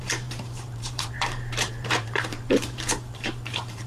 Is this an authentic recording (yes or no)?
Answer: no